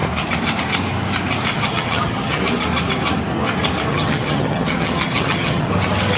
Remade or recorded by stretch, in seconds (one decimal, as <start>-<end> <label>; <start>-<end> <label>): 0.0-1.5 recorded; 1.5-2.4 remade; 2.4-3.9 recorded; 3.9-5.7 remade; 5.7-6.2 recorded